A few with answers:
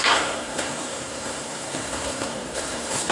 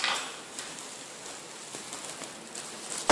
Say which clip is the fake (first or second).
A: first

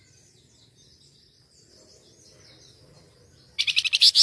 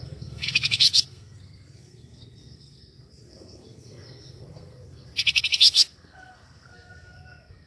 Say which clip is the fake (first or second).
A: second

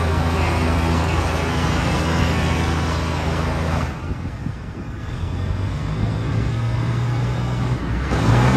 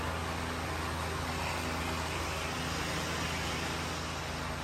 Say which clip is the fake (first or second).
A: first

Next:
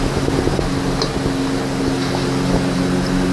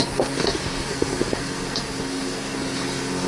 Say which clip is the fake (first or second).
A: second